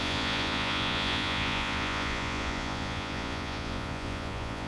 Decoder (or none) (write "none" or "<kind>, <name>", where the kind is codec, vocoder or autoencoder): vocoder, Vocos